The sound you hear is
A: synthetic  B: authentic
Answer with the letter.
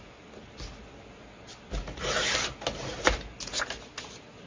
B